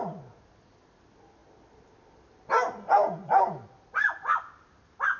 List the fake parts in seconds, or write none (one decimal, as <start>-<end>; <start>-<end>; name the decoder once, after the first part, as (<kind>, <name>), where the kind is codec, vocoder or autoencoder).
none